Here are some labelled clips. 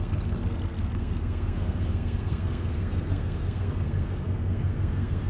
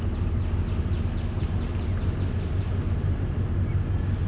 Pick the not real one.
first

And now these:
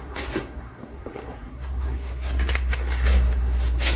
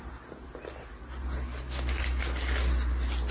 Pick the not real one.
first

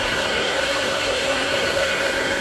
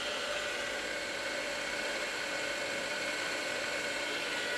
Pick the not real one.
first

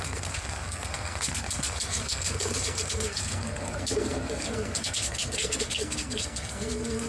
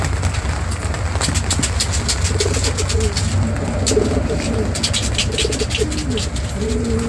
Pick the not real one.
first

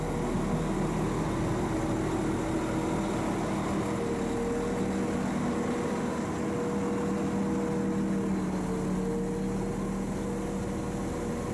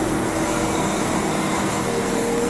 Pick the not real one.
second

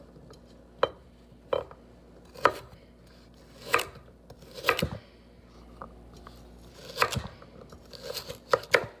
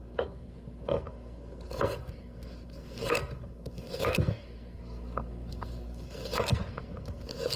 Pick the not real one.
second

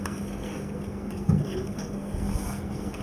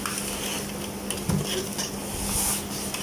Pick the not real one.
first